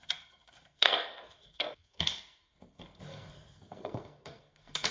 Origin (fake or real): fake